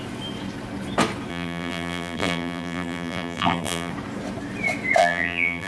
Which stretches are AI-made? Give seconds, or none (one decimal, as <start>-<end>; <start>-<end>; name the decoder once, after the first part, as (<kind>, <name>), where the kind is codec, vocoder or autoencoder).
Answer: 1.3-3.9 (vocoder, BigVGAN v2); 5.0-5.7